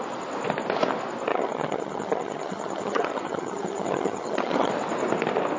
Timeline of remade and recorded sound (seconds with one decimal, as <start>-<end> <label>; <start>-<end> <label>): 0.0-1.3 recorded; 1.3-4.7 remade; 4.7-5.6 recorded